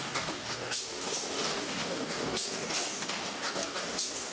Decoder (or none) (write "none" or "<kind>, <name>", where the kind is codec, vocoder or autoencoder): codec, DAC